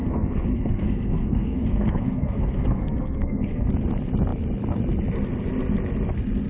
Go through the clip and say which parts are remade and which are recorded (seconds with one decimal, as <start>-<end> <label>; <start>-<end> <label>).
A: 0.0-3.7 remade; 3.7-6.5 recorded